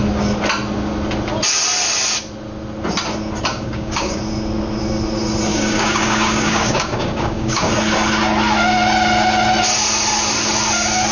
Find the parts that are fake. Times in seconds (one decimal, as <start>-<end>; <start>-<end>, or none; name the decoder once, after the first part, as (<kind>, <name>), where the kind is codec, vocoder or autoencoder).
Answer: 3.5-4.2 (codec, DAC); 5.5-7.7